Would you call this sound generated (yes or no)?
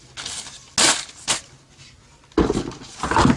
no